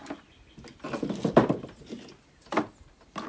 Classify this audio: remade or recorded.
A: recorded